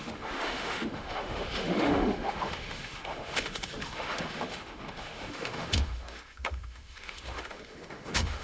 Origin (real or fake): fake